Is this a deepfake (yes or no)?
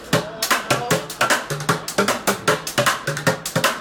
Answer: no